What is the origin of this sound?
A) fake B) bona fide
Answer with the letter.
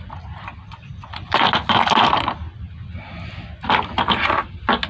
B